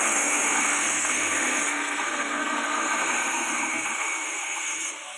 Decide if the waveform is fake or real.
fake